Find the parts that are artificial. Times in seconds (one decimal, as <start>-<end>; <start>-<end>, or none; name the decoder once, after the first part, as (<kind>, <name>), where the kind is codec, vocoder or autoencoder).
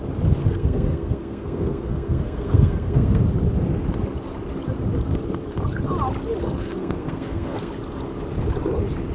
0.4-3.2 (codec, SNAC); 6.4-7.7